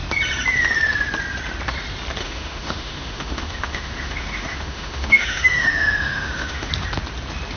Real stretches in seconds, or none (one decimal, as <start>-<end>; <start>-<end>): 0.0-2.2; 6.7-7.6